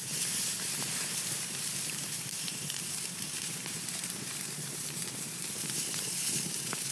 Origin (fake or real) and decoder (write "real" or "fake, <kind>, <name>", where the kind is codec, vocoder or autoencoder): fake, vocoder, BigVGAN v2